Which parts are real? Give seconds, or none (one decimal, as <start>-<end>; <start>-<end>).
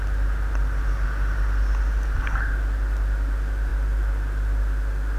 0.0-5.2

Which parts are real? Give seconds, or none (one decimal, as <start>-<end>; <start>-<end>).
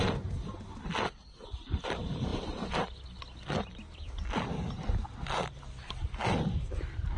0.0-7.2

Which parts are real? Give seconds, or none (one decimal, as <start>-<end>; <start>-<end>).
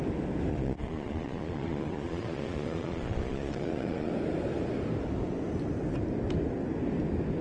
0.0-0.5; 4.1-7.4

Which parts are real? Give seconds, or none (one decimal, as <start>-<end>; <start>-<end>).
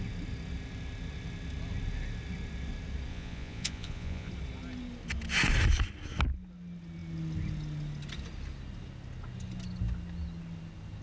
0.0-3.1; 4.3-11.0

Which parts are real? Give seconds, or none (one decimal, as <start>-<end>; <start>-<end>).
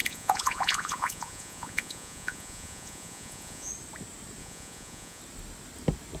3.7-4.4; 5.2-6.2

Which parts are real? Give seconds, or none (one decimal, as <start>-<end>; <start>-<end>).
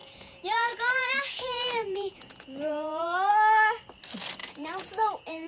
3.3-4.4